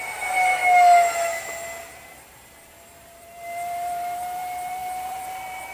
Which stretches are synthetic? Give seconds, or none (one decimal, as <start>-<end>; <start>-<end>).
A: 0.0-0.6; 1.9-5.7